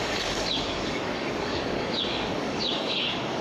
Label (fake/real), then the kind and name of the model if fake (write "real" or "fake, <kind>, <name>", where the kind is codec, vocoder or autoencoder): fake, codec, DAC